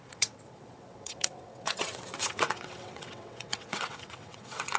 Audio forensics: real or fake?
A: fake